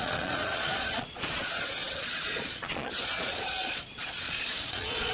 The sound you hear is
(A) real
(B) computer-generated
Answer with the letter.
B